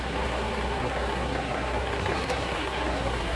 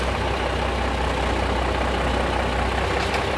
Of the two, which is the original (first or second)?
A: second